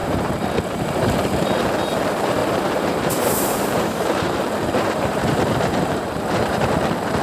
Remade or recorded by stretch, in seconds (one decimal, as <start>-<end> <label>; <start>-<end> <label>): 0.0-1.1 remade; 1.1-2.4 recorded; 2.4-6.7 remade; 6.7-7.2 recorded